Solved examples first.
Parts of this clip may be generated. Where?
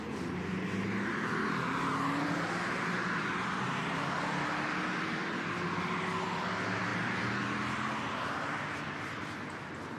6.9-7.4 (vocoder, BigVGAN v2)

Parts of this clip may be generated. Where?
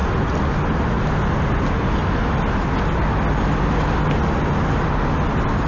none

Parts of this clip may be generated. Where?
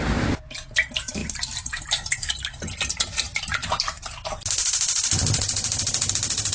none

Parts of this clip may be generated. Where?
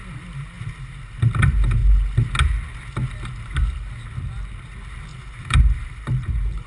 5.1-6.7 (vocoder, BigVGAN v2)